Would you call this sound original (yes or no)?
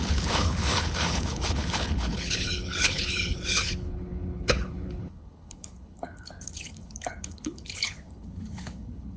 no